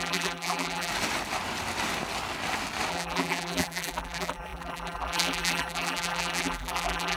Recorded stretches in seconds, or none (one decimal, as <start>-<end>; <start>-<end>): 0.9-2.9